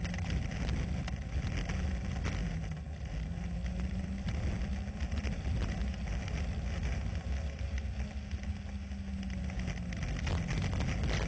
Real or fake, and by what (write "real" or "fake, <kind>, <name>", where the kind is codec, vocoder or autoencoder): real